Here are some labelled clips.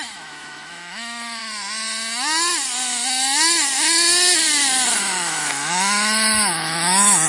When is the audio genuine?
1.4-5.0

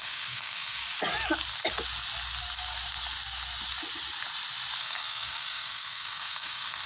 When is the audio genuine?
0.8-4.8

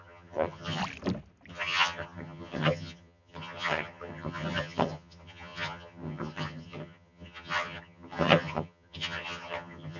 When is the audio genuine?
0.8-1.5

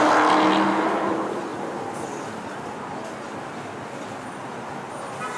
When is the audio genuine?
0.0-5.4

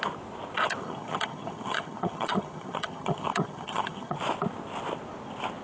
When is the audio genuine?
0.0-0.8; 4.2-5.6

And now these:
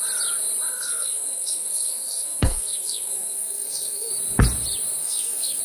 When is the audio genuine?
0.0-0.7; 4.1-5.0

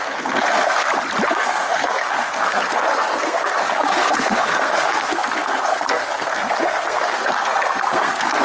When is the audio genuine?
0.8-1.3